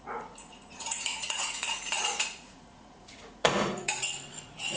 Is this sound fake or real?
fake